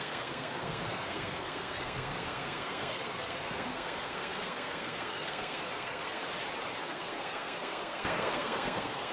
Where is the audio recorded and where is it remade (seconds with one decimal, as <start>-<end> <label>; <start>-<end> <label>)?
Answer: 0.0-6.2 remade; 6.2-6.8 recorded; 6.8-9.1 remade